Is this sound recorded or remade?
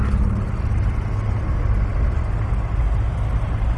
recorded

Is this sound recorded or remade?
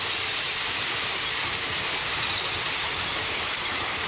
remade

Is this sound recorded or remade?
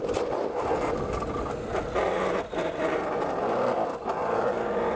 recorded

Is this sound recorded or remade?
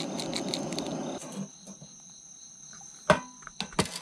recorded